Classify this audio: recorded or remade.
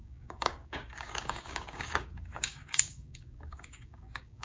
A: remade